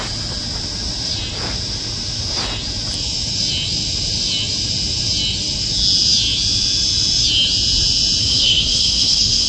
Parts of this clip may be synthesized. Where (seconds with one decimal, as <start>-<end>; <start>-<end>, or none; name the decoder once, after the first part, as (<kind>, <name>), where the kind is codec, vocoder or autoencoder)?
8.2-9.5 (codec, SNAC)